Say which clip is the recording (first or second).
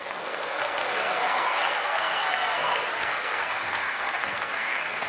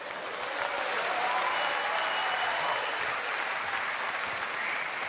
second